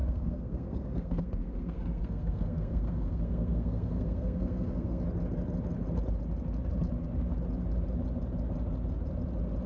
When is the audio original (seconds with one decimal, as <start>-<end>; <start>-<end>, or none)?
5.0-9.7